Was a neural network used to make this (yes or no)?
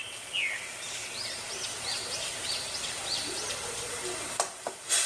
no